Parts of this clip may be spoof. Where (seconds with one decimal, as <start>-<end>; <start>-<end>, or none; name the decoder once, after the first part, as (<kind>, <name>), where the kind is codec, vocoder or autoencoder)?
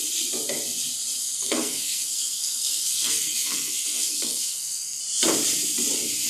1.2-5.0 (codec, SNAC)